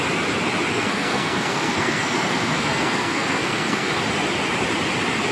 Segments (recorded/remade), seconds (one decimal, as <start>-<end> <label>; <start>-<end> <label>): 0.0-0.7 recorded; 0.7-3.9 remade; 3.9-5.3 recorded